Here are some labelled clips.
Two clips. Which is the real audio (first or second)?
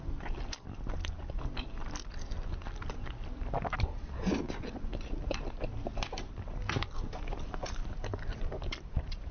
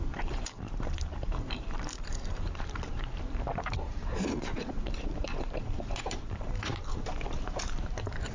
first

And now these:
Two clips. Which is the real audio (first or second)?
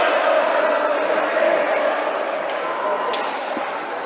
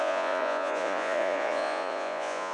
first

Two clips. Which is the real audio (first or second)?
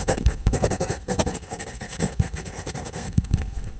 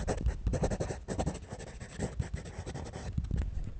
second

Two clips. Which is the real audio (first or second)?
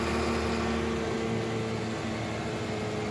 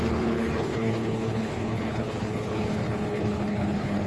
first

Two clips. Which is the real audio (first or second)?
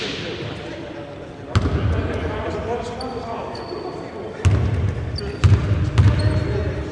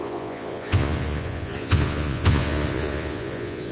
first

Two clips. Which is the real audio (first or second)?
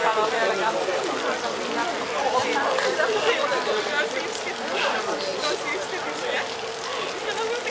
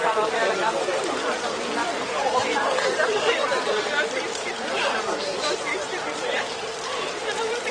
first